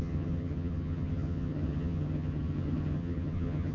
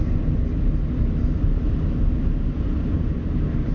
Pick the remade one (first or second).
first